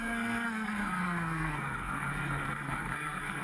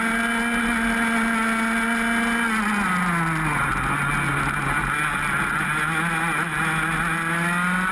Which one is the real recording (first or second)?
second